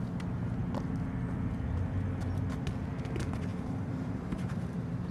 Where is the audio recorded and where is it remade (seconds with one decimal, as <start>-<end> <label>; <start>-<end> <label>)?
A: 0.0-3.5 recorded; 3.5-5.1 remade